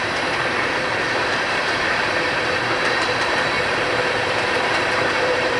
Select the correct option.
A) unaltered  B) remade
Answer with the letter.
B